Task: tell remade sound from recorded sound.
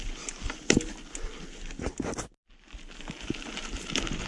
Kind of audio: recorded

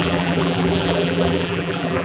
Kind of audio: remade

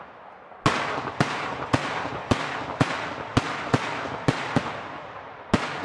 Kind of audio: recorded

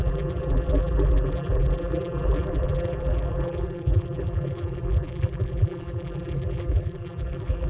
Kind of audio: remade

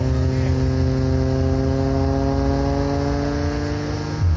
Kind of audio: recorded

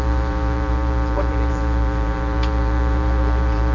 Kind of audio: remade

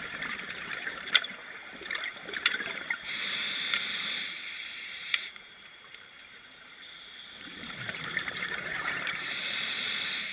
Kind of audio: remade